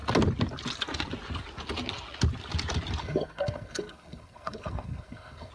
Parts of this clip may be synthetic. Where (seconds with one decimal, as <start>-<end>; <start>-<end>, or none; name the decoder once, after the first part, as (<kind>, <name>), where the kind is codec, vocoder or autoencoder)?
3.0-5.5 (codec, SNAC)